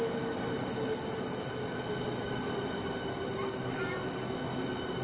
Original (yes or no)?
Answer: yes